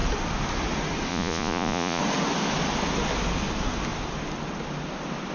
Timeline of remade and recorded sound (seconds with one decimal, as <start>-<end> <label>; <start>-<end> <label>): 0.0-1.1 recorded; 1.1-2.0 remade; 2.0-5.3 recorded